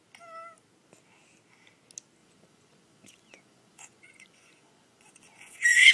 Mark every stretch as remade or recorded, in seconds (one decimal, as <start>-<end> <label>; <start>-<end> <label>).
0.0-2.2 recorded; 2.2-5.9 remade